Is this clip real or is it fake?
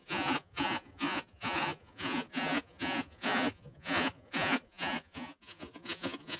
fake